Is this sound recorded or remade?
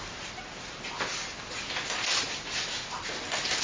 recorded